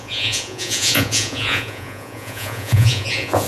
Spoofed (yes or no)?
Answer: yes